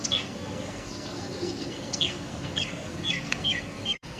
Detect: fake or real fake